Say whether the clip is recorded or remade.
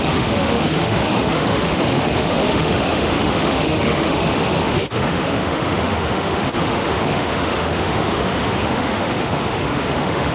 remade